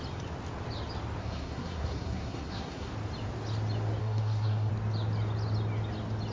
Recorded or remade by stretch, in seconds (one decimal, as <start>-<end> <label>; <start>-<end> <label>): 0.0-1.2 recorded; 1.2-2.9 remade; 2.9-4.0 recorded; 4.0-4.7 remade; 4.7-6.3 recorded